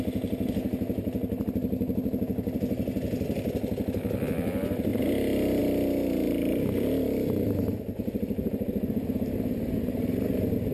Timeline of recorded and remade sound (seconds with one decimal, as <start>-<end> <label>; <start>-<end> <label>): 0.0-10.7 recorded